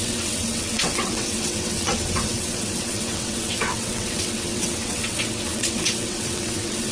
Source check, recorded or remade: remade